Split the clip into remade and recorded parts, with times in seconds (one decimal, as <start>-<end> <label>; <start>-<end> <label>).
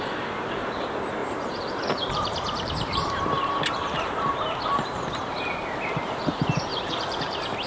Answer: 0.0-1.2 recorded; 1.2-4.4 remade; 4.4-6.7 recorded; 6.7-7.2 remade; 7.2-7.7 recorded